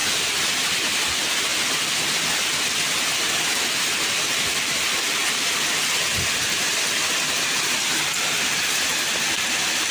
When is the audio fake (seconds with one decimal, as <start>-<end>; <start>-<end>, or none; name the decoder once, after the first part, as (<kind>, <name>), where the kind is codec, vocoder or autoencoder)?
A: none